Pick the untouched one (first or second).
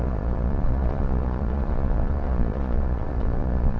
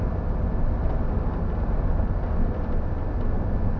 second